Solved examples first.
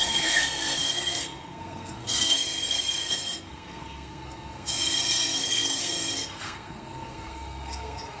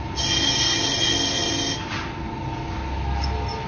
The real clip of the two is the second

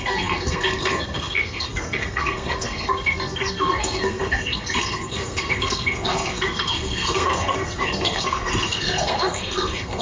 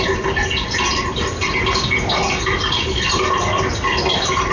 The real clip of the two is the second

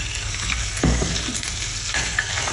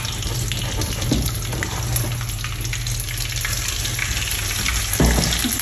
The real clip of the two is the second